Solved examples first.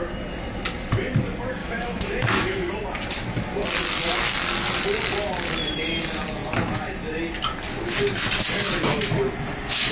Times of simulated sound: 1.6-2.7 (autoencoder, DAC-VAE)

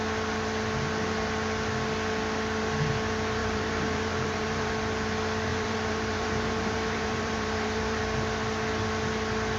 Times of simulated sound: 3.4-4.7 (vocoder, BigVGAN v2); 5.5-8.0

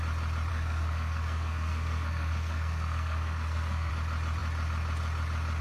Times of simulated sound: 0.5-3.9 (codec, SNAC)